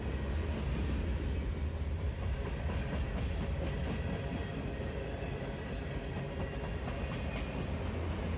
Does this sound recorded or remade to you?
recorded